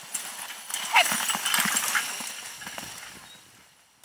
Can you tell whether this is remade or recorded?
recorded